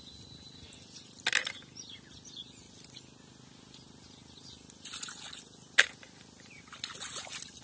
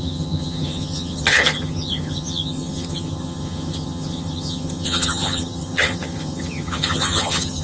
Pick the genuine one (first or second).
first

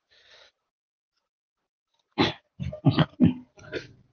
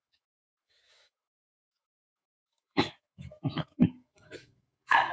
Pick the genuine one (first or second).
first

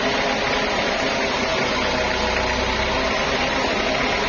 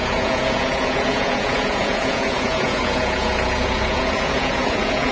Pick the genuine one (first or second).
first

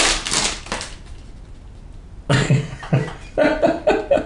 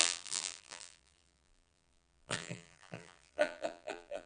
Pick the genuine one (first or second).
first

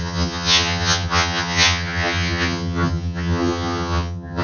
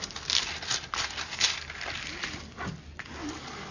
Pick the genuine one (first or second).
second